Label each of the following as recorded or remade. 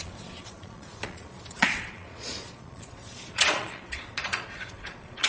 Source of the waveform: remade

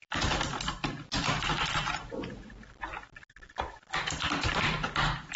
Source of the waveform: remade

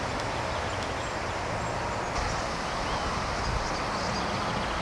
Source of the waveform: recorded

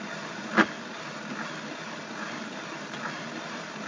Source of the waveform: recorded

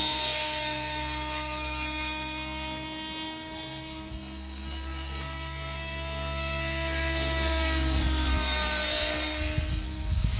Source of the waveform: remade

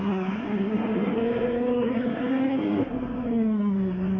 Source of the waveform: remade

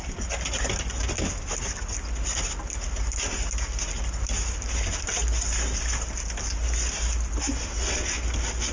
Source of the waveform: recorded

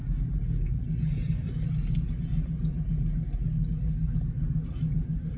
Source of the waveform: recorded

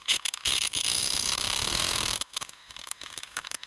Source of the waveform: remade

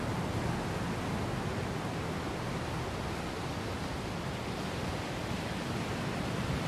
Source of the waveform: recorded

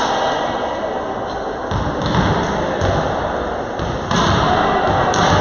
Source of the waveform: recorded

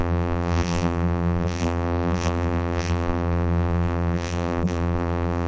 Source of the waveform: remade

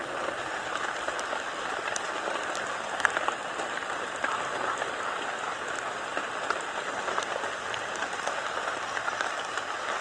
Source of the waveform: recorded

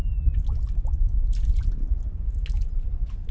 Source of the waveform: recorded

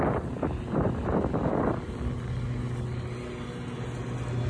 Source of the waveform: recorded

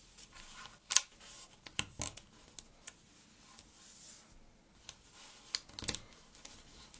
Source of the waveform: recorded